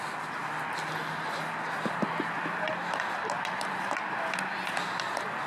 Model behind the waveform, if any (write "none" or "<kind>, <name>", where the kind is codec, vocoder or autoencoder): none